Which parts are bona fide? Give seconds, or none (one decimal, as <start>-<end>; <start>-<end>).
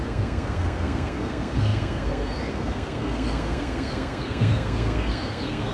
none